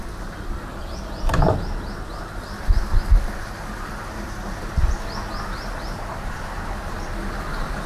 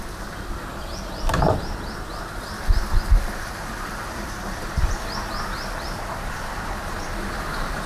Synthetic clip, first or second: second